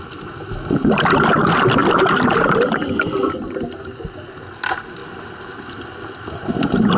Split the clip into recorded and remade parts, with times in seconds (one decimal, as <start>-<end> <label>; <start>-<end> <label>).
0.0-1.8 recorded; 1.8-3.5 remade; 3.5-5.0 recorded; 5.0-7.0 remade